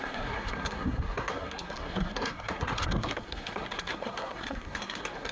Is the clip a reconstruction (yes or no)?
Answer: yes